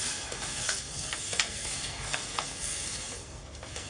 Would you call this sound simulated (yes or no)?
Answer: yes